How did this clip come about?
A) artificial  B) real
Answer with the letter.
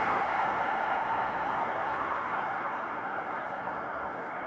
A